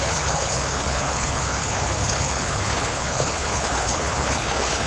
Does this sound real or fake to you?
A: fake